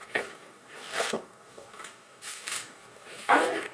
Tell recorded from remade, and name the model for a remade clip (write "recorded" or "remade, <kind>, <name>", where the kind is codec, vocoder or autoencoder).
remade, codec, DAC